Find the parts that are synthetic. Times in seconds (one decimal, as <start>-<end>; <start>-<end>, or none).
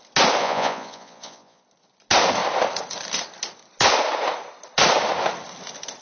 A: 0.4-1.6